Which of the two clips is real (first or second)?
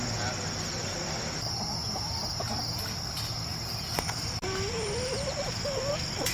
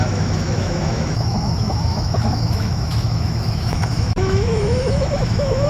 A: first